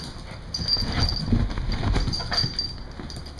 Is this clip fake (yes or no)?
no